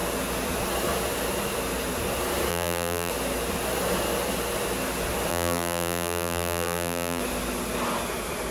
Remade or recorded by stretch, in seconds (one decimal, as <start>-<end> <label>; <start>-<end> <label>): 0.0-2.5 recorded; 2.5-3.1 remade; 3.1-5.3 recorded; 5.3-7.2 remade; 7.2-8.5 recorded